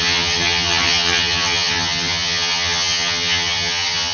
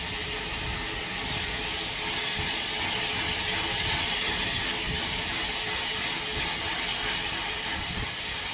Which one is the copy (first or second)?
first